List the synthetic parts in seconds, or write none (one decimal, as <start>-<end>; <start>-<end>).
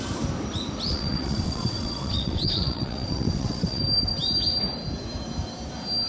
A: 0.9-3.8